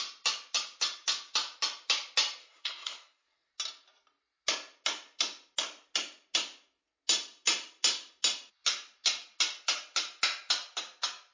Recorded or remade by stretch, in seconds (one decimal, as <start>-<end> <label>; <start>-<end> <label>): 0.0-2.4 recorded; 2.4-3.5 remade; 3.5-11.3 recorded